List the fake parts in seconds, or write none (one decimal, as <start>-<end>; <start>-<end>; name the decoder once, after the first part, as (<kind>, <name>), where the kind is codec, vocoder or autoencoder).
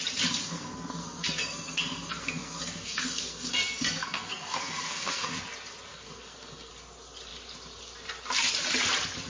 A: 0.4-5.3 (codec, SNAC); 5.9-6.7